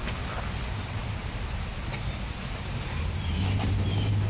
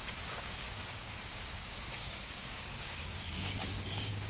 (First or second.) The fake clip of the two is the second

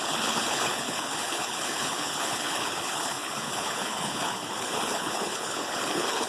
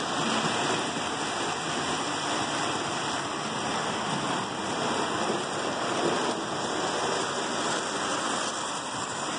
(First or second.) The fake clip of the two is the first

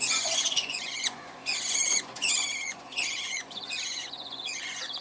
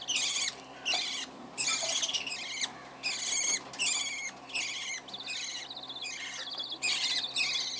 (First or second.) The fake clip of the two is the first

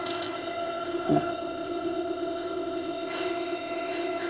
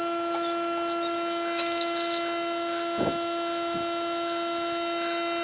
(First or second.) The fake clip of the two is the first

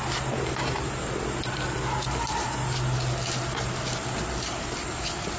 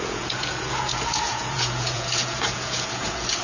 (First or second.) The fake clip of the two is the second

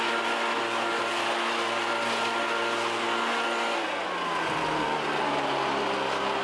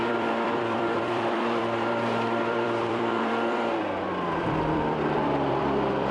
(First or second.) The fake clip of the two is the second